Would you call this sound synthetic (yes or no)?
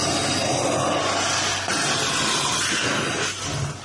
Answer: no